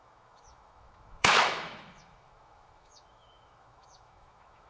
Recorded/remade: remade